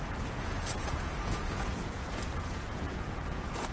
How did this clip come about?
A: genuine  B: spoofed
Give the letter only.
B